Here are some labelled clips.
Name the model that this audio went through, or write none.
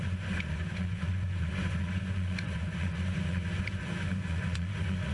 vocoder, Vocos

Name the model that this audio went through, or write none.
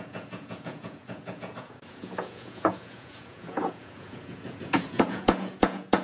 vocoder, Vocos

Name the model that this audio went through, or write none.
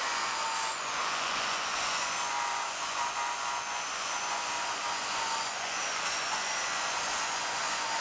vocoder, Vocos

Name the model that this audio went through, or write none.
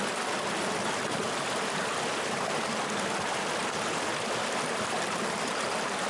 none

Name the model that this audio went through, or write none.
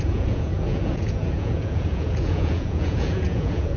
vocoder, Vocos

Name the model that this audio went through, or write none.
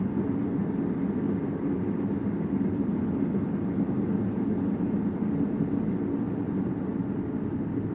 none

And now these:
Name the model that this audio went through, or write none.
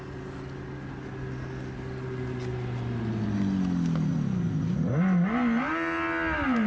none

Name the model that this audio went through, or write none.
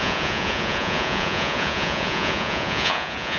vocoder, Vocos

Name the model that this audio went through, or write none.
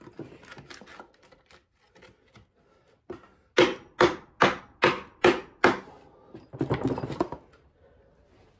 none